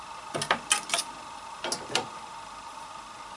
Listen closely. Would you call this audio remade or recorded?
recorded